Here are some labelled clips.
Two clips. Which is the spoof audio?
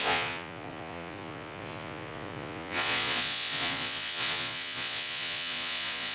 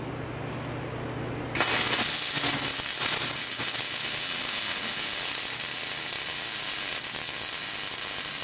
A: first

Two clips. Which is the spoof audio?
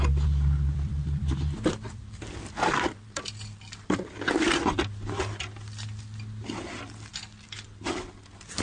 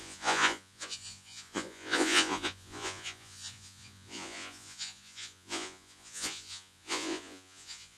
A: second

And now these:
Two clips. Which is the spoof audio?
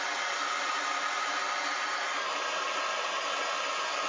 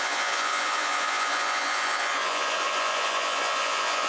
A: second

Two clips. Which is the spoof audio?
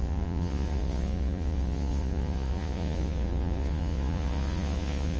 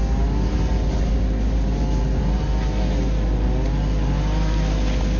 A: first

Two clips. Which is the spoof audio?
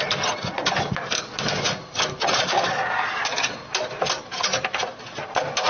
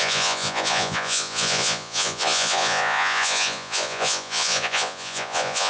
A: second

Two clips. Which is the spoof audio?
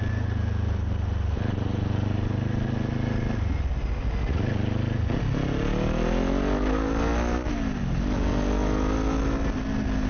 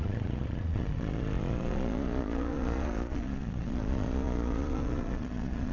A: second